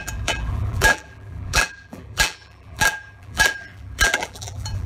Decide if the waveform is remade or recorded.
remade